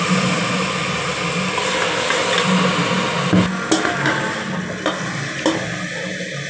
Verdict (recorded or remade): recorded